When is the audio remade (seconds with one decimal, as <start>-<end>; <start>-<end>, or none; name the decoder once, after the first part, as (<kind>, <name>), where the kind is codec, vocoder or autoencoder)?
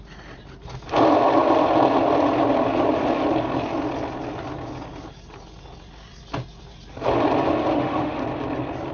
7.7-8.2 (autoencoder, DAC-VAE)